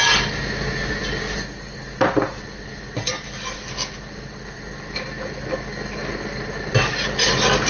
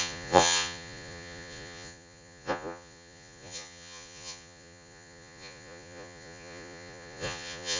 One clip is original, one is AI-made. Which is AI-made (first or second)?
second